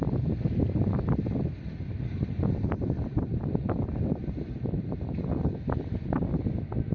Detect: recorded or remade recorded